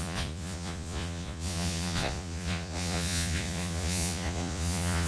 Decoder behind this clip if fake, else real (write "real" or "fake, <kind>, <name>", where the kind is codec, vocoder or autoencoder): fake, vocoder, Vocos